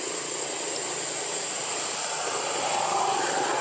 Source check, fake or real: real